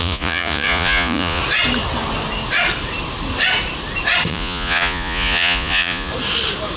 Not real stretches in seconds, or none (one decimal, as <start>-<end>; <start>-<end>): 0.0-1.4; 4.3-6.1